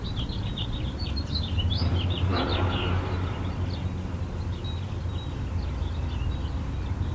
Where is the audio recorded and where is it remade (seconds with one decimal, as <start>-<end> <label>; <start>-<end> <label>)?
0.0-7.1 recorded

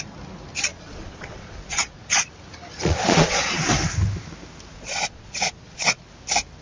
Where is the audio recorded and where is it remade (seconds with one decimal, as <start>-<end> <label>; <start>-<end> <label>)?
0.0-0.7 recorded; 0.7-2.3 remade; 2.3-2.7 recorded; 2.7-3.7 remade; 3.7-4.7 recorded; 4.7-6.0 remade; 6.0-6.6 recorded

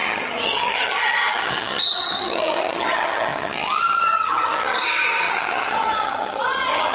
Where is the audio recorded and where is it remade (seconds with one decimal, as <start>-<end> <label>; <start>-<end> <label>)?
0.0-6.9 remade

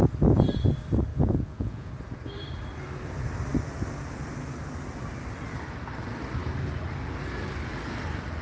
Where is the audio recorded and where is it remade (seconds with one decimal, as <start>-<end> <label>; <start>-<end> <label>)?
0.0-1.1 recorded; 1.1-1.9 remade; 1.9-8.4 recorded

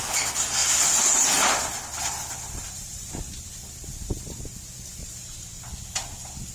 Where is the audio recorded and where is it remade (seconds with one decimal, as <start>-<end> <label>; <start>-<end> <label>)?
0.0-0.6 recorded; 0.6-3.3 remade; 3.3-5.0 recorded; 5.0-5.6 remade; 5.6-6.5 recorded

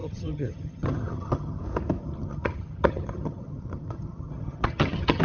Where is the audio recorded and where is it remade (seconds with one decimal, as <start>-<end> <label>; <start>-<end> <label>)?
0.0-1.6 remade; 1.6-2.0 recorded; 2.0-5.2 remade

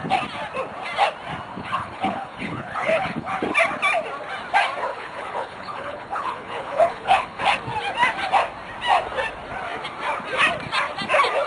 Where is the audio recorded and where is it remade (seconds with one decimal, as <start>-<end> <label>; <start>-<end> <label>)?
0.0-1.5 recorded; 1.5-3.4 remade; 3.4-4.9 recorded; 4.9-7.4 remade; 7.4-11.5 recorded

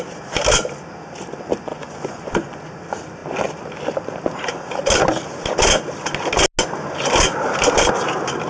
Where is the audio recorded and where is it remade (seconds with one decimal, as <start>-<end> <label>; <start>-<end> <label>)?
0.0-1.7 recorded; 1.7-2.7 remade; 2.7-8.5 recorded